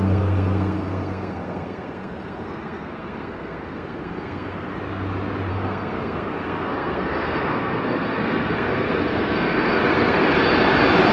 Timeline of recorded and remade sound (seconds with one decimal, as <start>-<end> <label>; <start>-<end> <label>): 0.0-4.7 remade; 4.7-5.5 recorded; 5.5-10.2 remade; 10.2-11.1 recorded